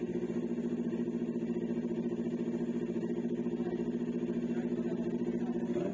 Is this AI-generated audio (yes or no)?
no